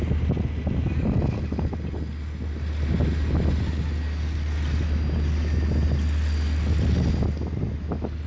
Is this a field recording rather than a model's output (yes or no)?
yes